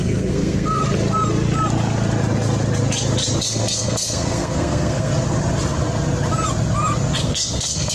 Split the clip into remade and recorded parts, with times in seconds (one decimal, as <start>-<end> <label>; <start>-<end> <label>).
0.0-0.8 remade; 0.8-3.4 recorded; 3.4-5.1 remade; 5.1-7.2 recorded; 7.2-7.9 remade